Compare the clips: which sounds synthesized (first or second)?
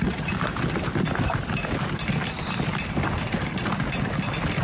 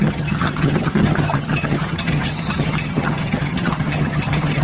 second